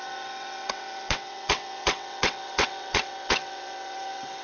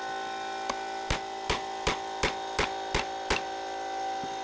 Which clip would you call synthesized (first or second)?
first